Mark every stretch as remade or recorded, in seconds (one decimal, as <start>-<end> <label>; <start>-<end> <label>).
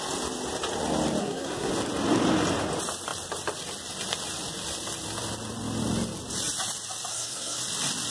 0.0-1.2 recorded; 1.2-1.7 remade; 1.7-7.1 recorded; 7.1-7.6 remade; 7.6-8.1 recorded